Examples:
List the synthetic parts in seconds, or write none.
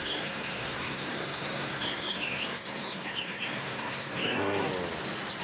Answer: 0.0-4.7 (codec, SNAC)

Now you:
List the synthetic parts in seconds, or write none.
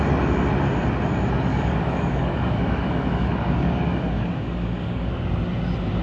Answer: 1.5-5.1 (codec, DAC)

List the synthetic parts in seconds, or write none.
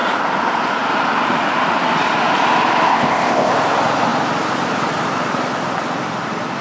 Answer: 2.9-3.5 (codec, ZipCodec)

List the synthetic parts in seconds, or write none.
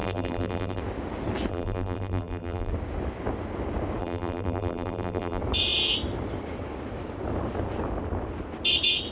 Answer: 0.0-0.8 (vocoder, BigVGAN v2); 1.5-2.7; 4.0-5.4